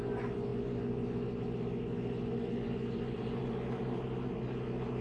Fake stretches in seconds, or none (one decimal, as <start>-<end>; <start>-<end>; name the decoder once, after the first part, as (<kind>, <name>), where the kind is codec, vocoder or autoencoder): none